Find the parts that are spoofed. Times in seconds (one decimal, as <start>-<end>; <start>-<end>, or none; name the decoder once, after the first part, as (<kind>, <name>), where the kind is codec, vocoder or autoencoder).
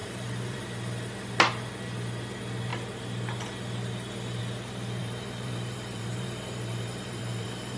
0.0-0.6 (vocoder, BigVGAN v2); 5.0-7.8